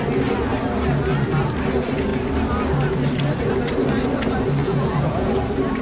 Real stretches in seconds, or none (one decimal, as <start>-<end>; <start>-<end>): 0.0-4.6; 5.3-5.8